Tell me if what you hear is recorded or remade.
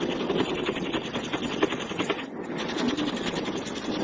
recorded